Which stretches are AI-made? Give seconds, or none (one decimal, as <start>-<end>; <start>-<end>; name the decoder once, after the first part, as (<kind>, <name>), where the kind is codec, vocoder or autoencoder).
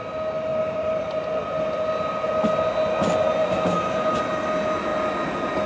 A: 0.5-1.1 (vocoder, BigVGAN v2); 3.4-4.2